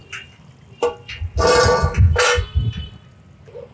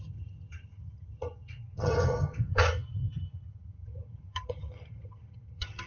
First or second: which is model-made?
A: second